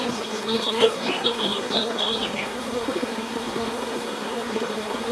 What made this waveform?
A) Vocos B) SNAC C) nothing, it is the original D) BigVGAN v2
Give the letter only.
B